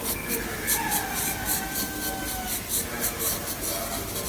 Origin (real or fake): real